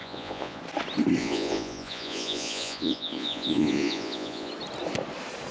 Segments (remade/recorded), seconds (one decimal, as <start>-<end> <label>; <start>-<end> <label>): 0.0-0.6 remade; 0.6-1.2 recorded; 1.2-4.5 remade; 4.5-5.5 recorded